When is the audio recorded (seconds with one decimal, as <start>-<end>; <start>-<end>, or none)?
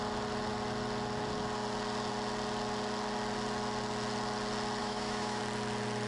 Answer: 0.0-4.8; 5.4-6.1